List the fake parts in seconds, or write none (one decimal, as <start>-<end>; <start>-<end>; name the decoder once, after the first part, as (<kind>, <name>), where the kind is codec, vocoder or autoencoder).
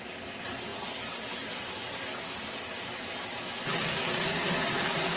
none